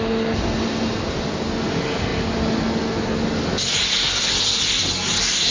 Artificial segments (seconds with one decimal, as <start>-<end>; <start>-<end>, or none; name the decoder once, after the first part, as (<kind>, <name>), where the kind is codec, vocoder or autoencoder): none